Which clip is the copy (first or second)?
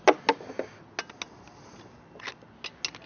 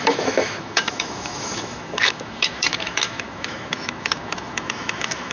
second